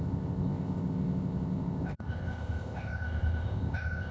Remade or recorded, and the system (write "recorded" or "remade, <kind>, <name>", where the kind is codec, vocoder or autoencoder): remade, codec, ZipCodec